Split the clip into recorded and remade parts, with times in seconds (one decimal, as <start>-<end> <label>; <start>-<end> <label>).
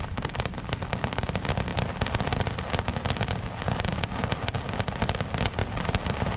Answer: 0.0-1.7 recorded; 1.7-2.3 remade; 2.3-5.6 recorded; 5.6-6.4 remade